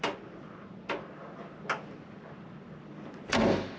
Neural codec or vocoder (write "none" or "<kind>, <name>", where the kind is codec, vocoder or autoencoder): none